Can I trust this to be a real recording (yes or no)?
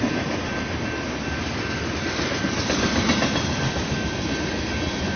yes